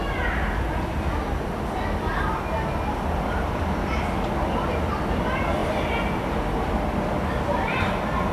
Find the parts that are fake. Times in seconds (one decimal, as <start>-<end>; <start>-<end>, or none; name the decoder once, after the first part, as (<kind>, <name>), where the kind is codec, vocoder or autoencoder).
none

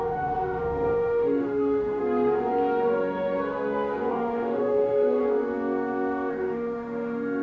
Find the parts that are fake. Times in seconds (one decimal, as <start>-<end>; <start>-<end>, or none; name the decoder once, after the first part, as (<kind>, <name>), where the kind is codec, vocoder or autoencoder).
0.0-2.0 (autoencoder, DAC-VAE); 4.1-5.2; 6.3-7.4